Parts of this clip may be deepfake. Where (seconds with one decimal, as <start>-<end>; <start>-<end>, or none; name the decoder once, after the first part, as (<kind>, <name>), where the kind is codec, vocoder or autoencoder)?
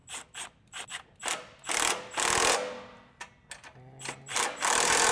none